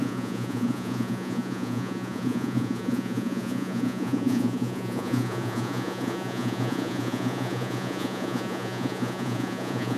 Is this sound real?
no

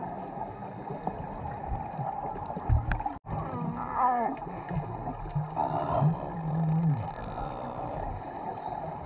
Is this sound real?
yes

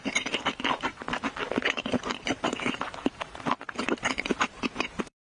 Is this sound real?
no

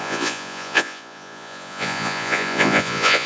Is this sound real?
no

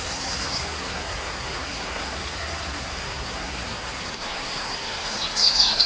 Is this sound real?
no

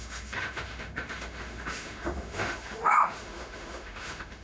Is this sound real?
no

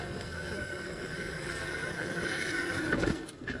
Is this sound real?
no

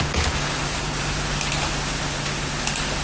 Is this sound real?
yes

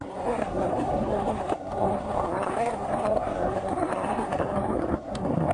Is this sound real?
no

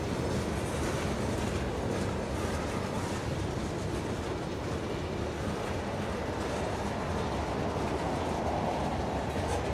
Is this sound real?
yes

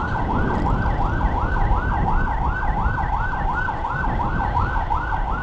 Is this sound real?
yes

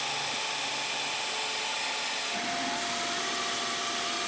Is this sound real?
yes